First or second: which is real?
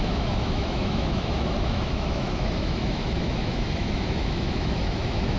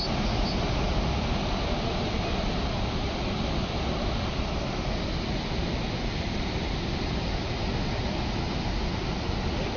second